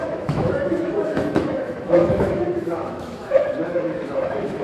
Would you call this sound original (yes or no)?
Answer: no